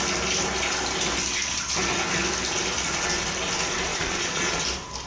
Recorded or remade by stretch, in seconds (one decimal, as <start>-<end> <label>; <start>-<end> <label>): 0.0-3.9 recorded; 3.9-4.6 remade; 4.6-5.1 recorded